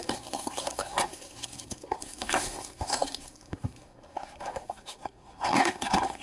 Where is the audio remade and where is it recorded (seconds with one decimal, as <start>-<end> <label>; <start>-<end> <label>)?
0.0-6.2 remade